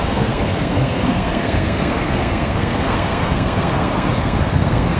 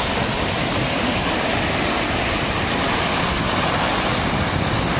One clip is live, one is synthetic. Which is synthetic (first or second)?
first